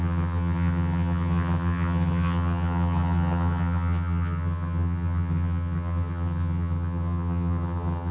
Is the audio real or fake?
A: fake